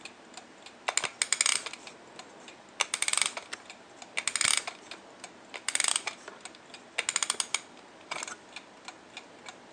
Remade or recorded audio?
recorded